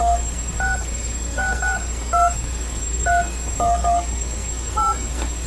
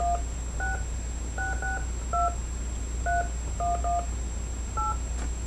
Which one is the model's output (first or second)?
first